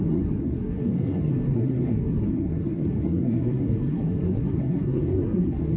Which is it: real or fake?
fake